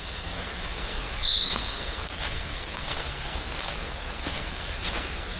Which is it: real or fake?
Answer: fake